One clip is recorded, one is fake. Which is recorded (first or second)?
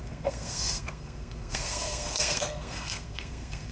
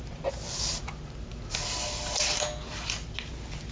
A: second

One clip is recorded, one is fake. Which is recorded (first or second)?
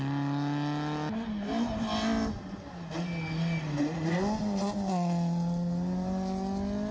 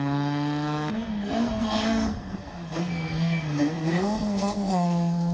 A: first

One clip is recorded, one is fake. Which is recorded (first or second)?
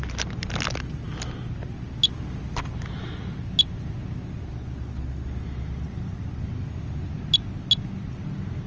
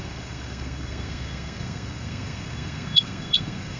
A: first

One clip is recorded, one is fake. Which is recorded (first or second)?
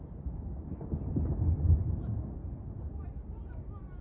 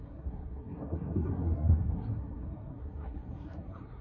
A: first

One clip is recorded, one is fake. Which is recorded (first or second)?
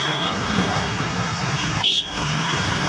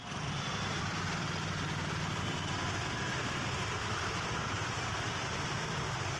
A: second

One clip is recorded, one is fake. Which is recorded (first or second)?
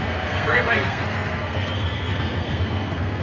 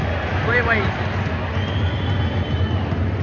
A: second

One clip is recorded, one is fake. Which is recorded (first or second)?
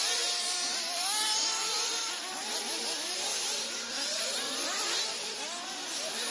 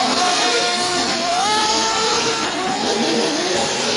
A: first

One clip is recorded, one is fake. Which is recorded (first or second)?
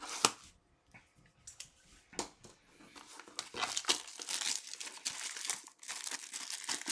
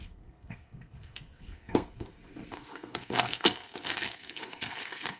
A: first